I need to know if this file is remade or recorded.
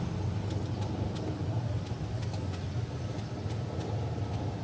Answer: recorded